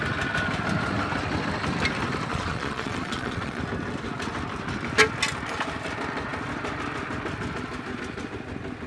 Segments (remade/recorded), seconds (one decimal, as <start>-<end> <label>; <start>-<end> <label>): 0.0-2.3 recorded; 2.3-3.6 remade; 3.6-8.9 recorded